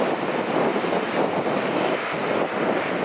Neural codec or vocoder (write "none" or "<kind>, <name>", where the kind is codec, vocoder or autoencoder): none